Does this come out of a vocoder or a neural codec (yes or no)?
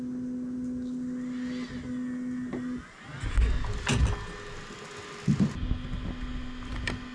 no